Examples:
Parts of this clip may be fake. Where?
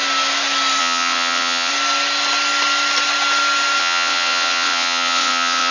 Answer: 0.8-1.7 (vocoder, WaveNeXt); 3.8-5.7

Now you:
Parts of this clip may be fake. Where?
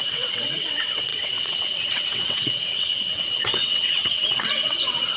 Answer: 0.0-5.2 (vocoder, WaveNeXt)